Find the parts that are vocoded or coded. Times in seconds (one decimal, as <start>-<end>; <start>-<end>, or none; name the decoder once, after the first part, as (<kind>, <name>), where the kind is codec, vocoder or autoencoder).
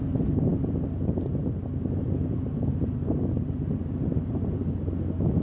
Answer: none